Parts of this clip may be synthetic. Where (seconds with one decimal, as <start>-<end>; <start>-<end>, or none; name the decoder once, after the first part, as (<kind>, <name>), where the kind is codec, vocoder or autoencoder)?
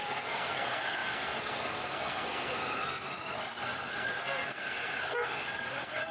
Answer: 0.0-6.1 (codec, SNAC)